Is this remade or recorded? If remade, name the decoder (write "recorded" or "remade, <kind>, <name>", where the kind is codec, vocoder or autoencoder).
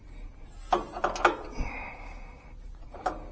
recorded